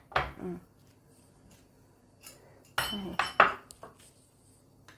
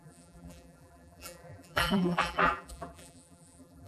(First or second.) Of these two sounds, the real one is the first